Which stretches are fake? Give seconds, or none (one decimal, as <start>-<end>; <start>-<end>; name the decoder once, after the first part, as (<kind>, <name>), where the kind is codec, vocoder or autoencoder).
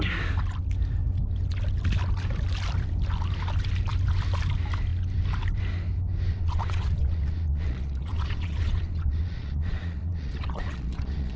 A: 6.3-11.4 (vocoder, Vocos)